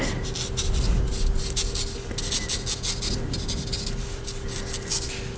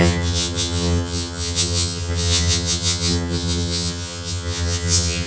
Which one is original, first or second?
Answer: first